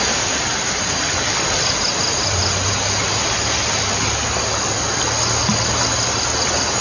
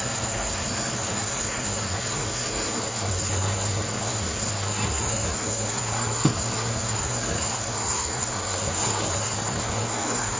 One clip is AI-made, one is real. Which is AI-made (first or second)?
second